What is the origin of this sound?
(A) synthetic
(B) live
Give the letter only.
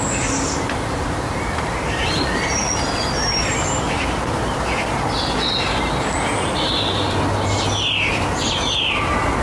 B